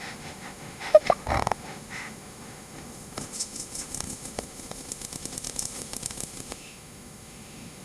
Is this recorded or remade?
remade